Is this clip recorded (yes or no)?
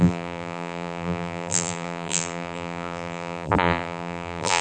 no